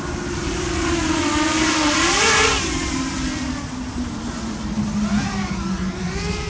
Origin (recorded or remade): recorded